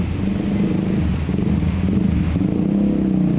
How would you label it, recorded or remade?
recorded